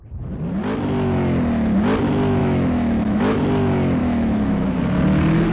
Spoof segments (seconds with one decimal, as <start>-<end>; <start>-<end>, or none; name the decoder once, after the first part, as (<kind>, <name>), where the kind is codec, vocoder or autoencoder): 2.4-3.4 (autoencoder, DAC-VAE); 4.0-4.8